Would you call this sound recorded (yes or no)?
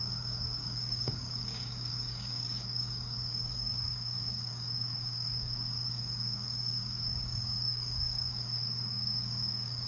no